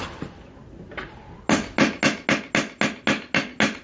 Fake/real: real